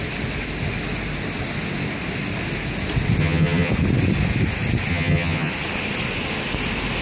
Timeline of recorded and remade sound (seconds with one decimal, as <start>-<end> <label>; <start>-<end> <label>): 0.0-3.2 recorded; 3.2-3.7 remade; 3.7-4.9 recorded; 4.9-5.5 remade; 5.5-7.0 recorded